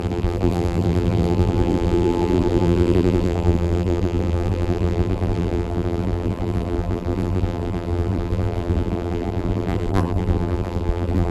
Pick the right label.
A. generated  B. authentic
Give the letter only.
A